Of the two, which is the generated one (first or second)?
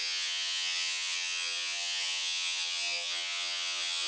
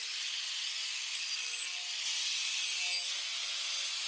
first